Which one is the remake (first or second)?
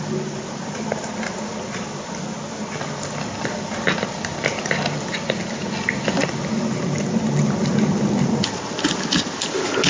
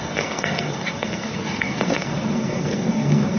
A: second